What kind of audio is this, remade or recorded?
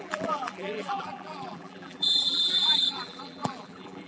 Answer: remade